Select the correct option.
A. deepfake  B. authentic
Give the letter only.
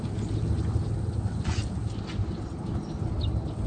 B